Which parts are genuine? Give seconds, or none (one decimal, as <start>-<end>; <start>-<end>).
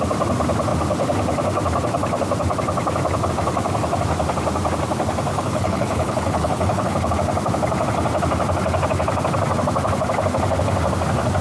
0.0-5.3; 7.1-11.4